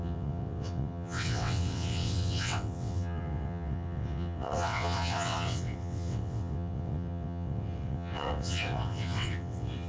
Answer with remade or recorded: remade